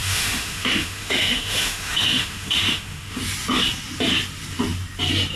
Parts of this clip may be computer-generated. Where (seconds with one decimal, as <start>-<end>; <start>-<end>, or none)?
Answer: 0.0-3.2